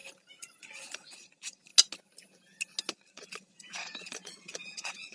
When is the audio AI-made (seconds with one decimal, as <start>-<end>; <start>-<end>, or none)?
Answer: 0.6-1.7; 2.9-5.1